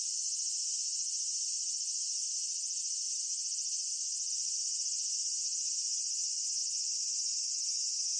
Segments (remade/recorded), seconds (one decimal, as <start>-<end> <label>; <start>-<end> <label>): 0.0-2.2 remade; 2.2-4.3 recorded; 4.3-8.2 remade